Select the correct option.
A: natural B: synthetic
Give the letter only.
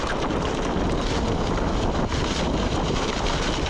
A